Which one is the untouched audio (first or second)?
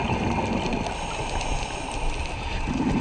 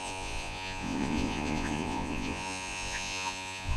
first